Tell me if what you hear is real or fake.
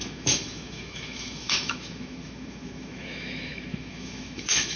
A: fake